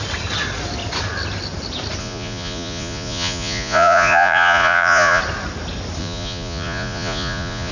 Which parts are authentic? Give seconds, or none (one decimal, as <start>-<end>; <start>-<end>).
0.0-2.0; 5.2-6.0